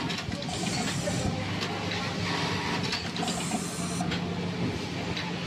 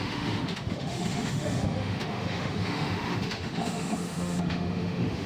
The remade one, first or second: second